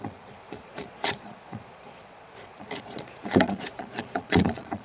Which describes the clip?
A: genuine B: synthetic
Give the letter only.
B